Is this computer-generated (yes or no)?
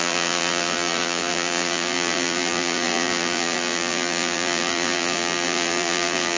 yes